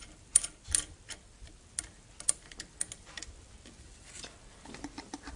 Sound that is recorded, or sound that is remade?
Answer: recorded